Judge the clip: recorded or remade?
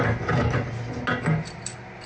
recorded